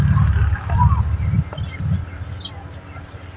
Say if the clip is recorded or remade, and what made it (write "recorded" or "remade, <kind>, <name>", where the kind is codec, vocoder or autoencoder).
recorded